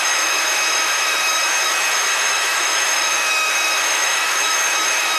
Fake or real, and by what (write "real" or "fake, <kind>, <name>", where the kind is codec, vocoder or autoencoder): fake, autoencoder, DAC-VAE